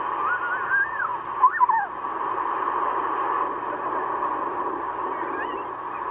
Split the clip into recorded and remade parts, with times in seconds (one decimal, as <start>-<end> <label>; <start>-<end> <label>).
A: 0.0-6.1 recorded